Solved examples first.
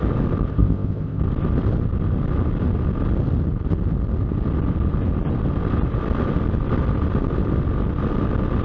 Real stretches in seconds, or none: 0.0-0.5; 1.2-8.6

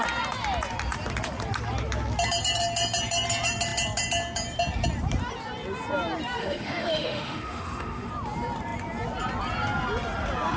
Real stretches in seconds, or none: 0.0-6.4; 8.1-10.6